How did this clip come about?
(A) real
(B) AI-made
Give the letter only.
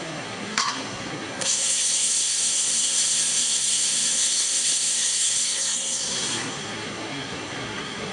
B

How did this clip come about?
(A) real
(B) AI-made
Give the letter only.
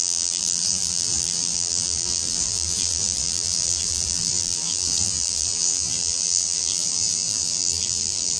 B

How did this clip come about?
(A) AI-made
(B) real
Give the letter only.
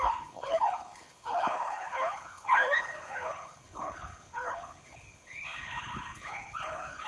A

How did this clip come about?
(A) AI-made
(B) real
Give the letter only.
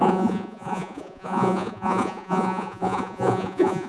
A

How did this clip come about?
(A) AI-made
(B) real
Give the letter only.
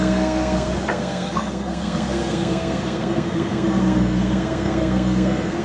A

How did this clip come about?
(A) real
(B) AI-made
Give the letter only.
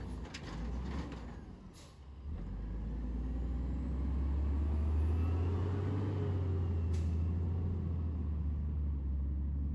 A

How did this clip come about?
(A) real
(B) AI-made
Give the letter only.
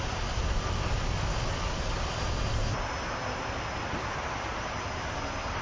A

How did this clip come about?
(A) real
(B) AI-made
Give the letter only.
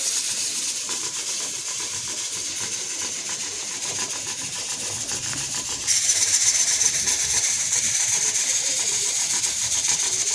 B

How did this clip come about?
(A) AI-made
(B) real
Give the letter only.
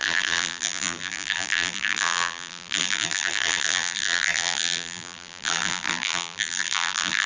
A